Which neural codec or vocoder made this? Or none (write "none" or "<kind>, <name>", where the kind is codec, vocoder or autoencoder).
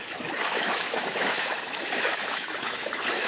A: autoencoder, DAC-VAE